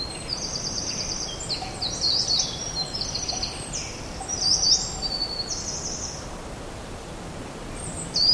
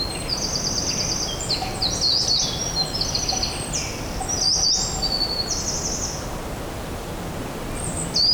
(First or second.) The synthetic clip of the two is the first